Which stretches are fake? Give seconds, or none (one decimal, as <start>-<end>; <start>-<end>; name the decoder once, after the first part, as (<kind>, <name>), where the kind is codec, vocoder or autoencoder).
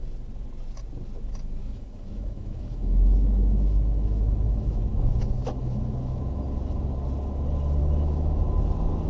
1.6-6.4 (autoencoder, DAC-VAE); 7.8-8.4